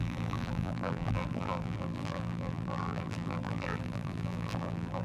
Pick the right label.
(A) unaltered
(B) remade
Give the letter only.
B